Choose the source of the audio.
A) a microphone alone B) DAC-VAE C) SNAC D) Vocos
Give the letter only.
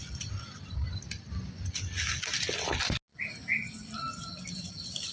A